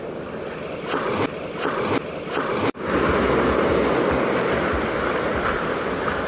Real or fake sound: real